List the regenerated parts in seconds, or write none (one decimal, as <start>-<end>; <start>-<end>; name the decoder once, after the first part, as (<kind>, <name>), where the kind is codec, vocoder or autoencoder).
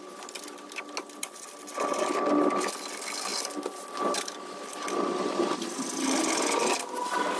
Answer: none